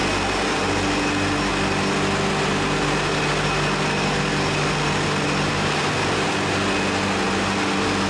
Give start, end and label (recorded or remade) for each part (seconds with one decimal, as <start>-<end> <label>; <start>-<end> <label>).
0.0-8.1 recorded